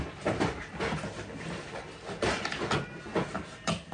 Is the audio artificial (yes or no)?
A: no